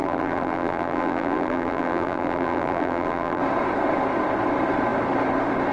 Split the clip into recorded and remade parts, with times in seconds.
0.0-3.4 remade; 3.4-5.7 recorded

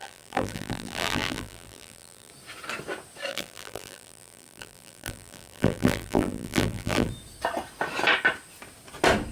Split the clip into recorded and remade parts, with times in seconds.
0.0-2.3 remade; 2.3-3.3 recorded; 3.3-7.1 remade; 7.1-9.3 recorded